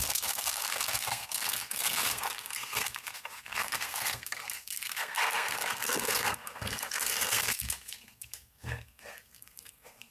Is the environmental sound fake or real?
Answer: fake